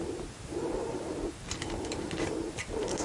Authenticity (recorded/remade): remade